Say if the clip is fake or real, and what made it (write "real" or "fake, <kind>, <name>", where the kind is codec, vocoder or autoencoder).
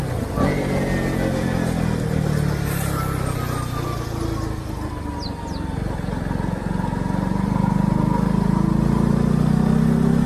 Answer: real